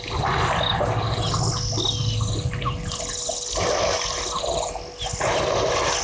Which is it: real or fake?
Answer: real